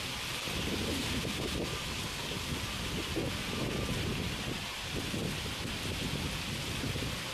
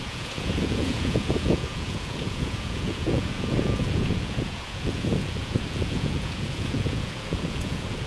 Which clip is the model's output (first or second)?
second